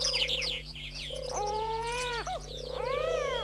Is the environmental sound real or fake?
fake